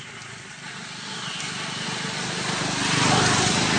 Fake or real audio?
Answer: real